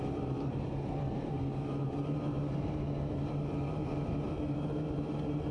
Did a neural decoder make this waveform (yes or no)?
yes